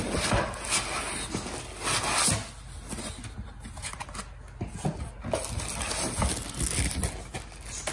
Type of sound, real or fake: real